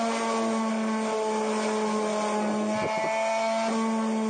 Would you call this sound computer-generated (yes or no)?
no